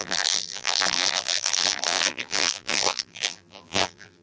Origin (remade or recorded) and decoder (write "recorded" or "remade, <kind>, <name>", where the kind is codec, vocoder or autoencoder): remade, vocoder, BigVGAN v2